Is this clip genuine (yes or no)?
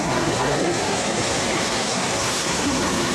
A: no